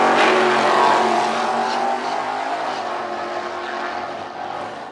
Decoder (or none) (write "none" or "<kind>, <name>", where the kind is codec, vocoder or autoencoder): none